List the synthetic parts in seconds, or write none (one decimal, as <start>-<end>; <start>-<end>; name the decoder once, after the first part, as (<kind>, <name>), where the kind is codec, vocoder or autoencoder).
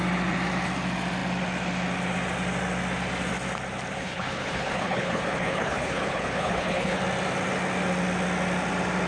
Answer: 4.0-7.0 (codec, HILCodec)